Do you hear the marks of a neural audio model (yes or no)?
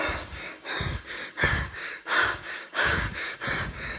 yes